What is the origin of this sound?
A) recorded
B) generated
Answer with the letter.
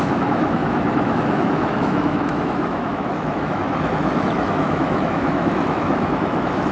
B